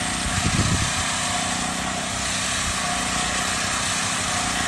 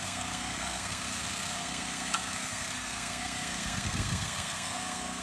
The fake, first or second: second